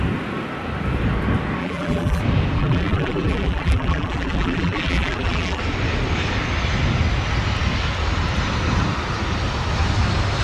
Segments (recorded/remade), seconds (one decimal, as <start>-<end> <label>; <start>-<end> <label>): 0.0-1.6 recorded; 1.6-2.2 remade; 2.2-2.6 recorded; 2.6-5.6 remade; 5.6-10.4 recorded